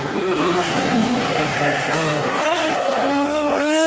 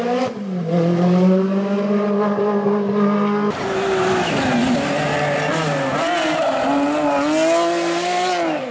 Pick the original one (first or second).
second